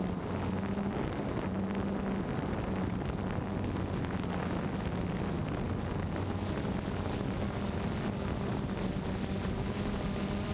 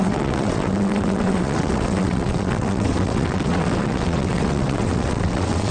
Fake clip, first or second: second